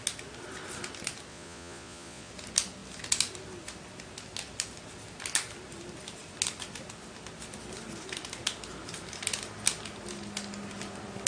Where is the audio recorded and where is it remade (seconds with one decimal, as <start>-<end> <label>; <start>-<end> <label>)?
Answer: 0.0-1.3 recorded; 1.3-2.3 remade; 2.3-11.3 recorded